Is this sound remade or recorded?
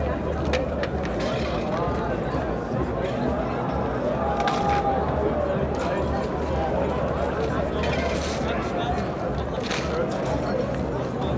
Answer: recorded